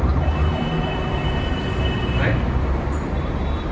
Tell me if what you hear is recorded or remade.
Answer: remade